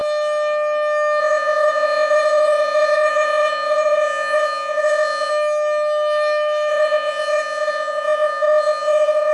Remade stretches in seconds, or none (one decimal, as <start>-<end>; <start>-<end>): 1.2-5.3; 6.7-9.3